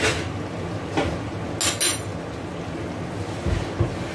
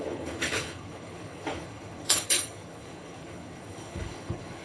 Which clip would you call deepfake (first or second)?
second